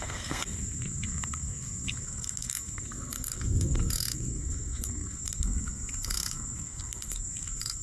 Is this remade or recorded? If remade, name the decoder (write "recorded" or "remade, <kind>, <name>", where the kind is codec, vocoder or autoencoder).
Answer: remade, codec, SNAC